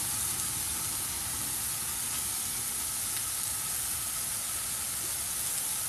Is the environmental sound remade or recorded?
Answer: recorded